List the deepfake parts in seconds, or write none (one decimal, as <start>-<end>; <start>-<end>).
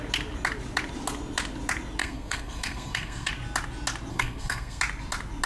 2.0-3.3; 4.1-4.8